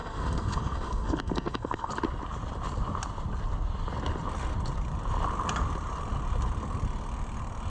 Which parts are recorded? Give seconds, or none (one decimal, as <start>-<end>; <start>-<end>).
1.9-7.7